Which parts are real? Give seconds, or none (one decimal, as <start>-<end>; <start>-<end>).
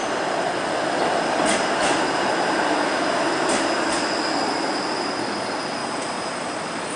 0.0-5.8